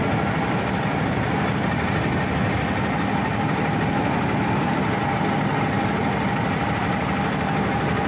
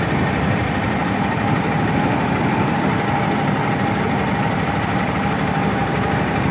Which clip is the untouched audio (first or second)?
first